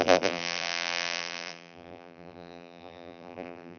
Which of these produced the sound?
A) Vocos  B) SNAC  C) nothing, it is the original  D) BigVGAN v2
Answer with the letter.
D